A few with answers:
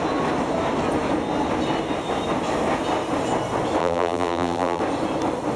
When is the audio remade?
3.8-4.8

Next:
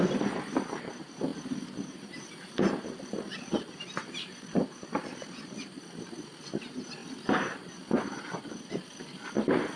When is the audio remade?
0.0-9.8

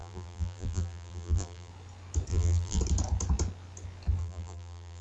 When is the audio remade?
0.0-1.7; 2.3-2.8; 4.2-5.0

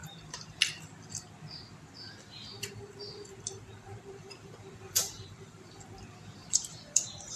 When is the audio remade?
0.0-0.6; 3.8-5.7; 6.4-7.4

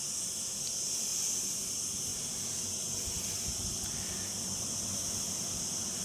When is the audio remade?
0.0-2.1; 5.3-6.0